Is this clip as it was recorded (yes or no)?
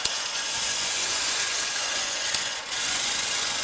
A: no